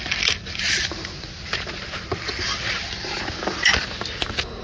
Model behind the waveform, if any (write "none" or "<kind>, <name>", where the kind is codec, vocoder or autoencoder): none